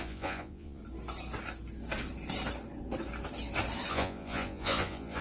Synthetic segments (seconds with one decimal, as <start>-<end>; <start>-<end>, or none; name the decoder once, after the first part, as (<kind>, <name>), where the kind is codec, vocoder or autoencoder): 0.0-0.8 (vocoder, Vocos); 3.9-5.2